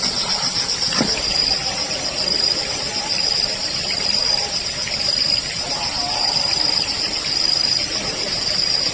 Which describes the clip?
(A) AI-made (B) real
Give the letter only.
A